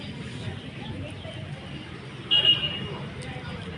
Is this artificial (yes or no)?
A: no